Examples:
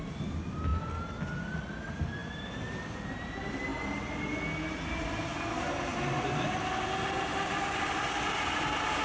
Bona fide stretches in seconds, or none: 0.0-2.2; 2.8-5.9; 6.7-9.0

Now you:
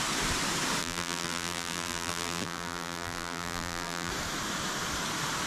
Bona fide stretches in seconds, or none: 0.0-0.8; 4.1-5.5

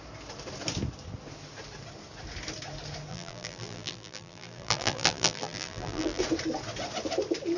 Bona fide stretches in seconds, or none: 0.0-3.1; 6.2-7.6

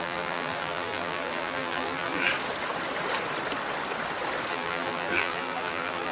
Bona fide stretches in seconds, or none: 2.3-4.5

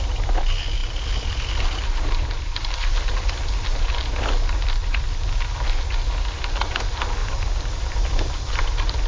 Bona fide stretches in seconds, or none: 0.0-0.8; 3.3-7.2; 8.6-9.1

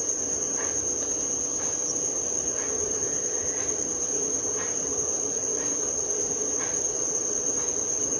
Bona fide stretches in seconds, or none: 0.7-2.0